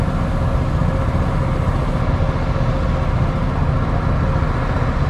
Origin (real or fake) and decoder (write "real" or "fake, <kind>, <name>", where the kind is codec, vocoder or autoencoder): real